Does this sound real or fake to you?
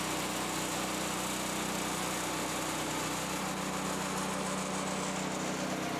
real